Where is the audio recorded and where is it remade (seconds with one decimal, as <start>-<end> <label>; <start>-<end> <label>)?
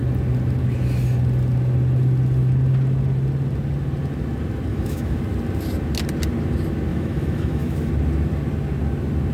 0.0-4.7 recorded; 4.7-5.2 remade; 5.2-6.9 recorded; 6.9-7.9 remade; 7.9-9.3 recorded